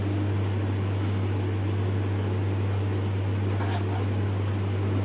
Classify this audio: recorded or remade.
recorded